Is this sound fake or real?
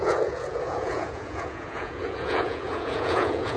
fake